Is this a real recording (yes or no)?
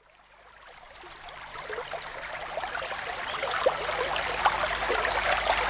yes